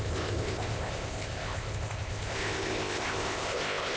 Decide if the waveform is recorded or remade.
remade